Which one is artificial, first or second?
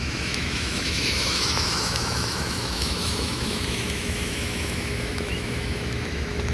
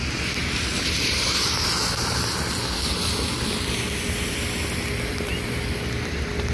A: first